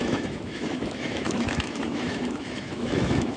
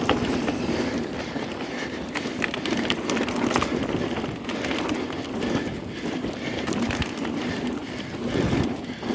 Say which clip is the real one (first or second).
second